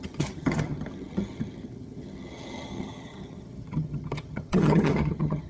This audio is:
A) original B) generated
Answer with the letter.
B